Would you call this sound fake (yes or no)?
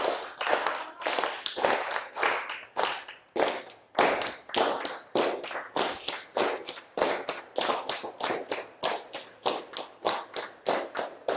no